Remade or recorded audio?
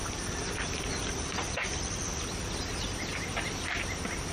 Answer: recorded